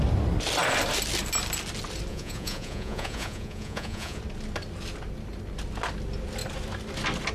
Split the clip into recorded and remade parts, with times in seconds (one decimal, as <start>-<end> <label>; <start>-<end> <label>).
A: 0.0-2.1 recorded; 2.1-4.2 remade; 4.2-7.3 recorded